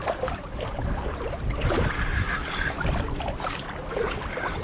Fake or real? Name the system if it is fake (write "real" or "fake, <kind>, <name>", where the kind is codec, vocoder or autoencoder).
real